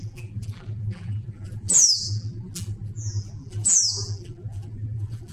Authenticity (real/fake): fake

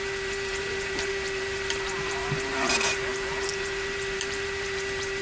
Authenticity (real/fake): fake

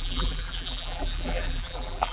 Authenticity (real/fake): fake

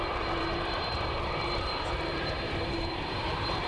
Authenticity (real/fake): fake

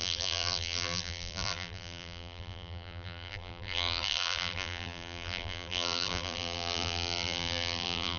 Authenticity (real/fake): fake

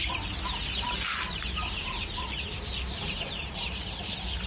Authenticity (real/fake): fake